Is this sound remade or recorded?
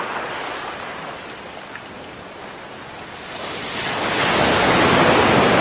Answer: recorded